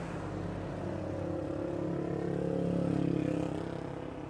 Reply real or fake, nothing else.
real